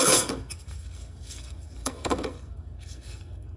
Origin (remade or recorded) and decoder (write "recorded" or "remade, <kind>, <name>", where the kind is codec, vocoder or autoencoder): remade, codec, SNAC